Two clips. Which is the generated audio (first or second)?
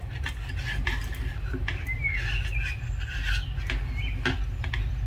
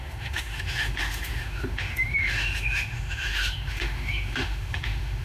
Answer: second